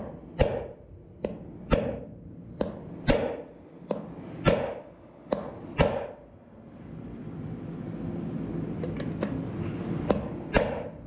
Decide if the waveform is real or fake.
real